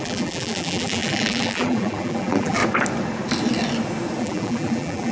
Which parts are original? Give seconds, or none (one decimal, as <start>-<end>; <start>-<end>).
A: 2.6-4.2